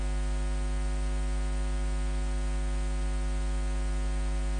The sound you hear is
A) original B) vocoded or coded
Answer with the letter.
A